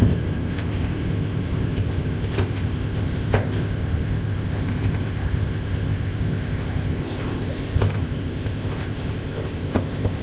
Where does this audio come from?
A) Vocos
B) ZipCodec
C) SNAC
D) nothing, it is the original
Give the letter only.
B